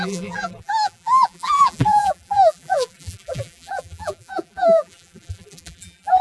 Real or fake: fake